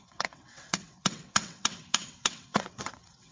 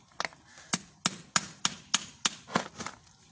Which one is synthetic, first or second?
first